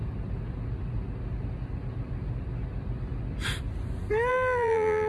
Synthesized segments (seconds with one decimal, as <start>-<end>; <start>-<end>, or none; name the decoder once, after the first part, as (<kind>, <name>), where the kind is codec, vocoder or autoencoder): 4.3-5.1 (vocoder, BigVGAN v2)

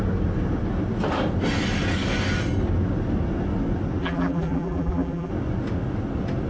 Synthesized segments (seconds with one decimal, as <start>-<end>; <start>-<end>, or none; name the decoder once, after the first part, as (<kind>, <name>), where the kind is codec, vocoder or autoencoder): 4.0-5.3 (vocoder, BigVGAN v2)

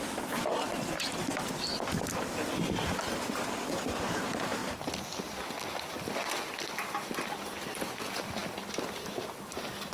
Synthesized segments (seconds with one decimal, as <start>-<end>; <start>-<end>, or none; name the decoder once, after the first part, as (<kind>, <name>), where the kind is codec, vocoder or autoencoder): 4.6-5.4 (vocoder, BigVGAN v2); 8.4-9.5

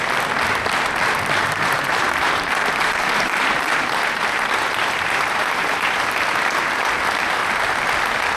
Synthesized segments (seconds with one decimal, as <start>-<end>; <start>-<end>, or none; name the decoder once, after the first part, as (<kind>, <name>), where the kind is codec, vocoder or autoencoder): 1.4-6.4 (vocoder, BigVGAN v2); 7.4-7.9

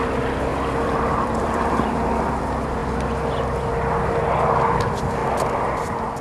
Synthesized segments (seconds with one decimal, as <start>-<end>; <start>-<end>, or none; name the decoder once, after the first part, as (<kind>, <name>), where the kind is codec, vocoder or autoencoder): 0.5-2.3 (vocoder, BigVGAN v2)

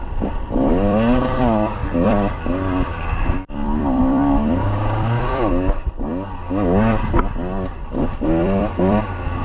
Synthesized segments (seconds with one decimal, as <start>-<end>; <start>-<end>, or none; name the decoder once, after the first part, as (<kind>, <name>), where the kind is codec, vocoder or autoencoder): 0.0-6.1 (vocoder, BigVGAN v2); 7.9-9.4